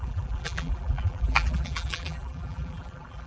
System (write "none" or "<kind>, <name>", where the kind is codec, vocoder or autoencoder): vocoder, BigVGAN v2